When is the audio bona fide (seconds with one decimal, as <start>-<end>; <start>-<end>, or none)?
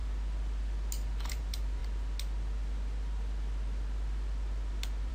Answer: 0.0-1.3; 1.8-5.1